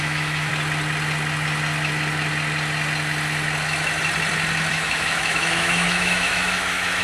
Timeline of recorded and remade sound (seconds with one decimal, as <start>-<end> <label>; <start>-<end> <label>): 0.0-0.5 remade; 0.5-4.7 recorded; 4.7-7.0 remade